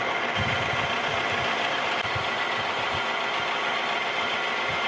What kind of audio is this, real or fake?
real